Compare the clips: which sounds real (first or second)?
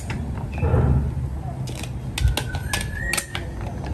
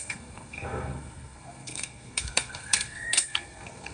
first